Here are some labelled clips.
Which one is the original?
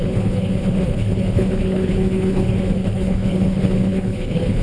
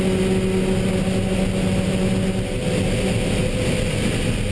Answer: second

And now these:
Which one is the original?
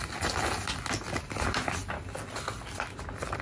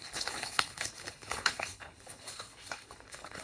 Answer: first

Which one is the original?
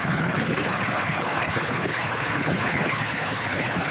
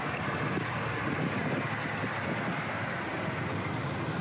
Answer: second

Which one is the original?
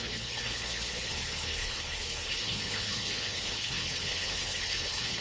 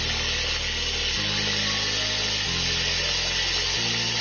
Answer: second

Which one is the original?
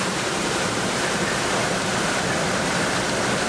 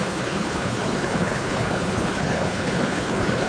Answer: first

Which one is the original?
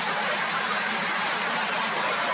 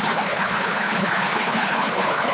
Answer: first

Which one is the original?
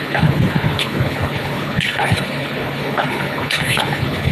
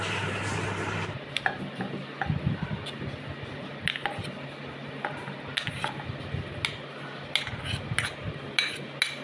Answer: second